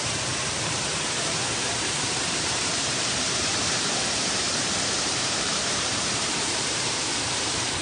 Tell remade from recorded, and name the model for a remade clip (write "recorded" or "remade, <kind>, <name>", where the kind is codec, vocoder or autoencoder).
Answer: remade, vocoder, BigVGAN v2